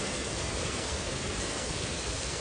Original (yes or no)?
no